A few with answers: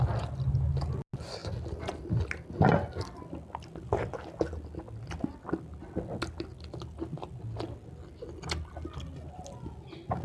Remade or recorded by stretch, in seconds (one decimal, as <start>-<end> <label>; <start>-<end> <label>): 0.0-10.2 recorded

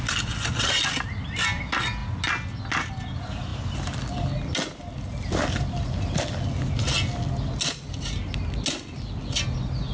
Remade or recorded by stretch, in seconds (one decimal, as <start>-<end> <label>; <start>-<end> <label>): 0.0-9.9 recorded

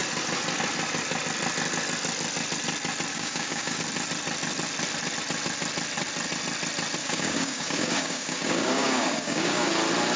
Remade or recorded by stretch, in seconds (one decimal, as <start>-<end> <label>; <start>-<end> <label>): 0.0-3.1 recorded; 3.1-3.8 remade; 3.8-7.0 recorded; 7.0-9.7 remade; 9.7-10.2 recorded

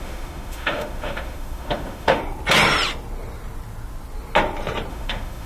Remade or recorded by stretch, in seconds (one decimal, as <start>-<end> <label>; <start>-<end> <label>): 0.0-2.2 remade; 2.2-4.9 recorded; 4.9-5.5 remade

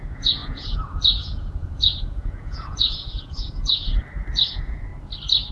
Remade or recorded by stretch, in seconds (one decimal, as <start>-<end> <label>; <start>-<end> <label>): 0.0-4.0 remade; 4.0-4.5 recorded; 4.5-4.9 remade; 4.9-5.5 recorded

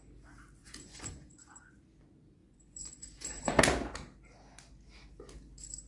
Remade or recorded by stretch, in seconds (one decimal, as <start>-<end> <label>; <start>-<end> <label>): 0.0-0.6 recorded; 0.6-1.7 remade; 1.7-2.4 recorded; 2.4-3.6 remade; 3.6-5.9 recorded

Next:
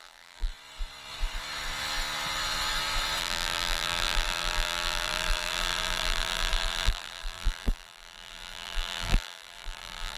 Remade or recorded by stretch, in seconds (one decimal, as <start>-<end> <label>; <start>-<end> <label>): 0.0-0.5 remade; 0.5-3.2 recorded; 3.2-10.2 remade

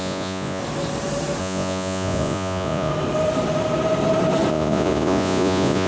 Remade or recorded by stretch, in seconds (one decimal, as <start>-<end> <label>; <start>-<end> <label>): 0.0-0.6 remade; 0.6-1.4 recorded; 1.4-2.9 remade; 2.9-4.5 recorded; 4.5-5.9 remade